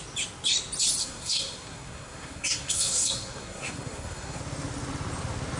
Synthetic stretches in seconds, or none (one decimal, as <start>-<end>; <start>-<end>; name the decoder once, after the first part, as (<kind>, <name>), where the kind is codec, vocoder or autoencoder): 1.0-4.4 (codec, SNAC)